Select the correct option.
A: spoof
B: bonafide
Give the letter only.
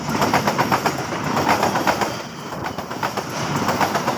B